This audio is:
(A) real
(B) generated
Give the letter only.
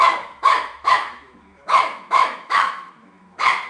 B